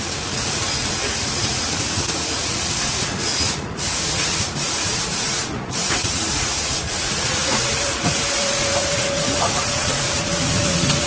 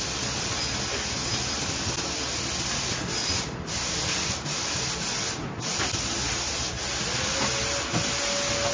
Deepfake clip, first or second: first